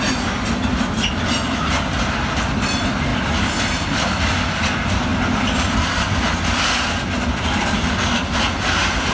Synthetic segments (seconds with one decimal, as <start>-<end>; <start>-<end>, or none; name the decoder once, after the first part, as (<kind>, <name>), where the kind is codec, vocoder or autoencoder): none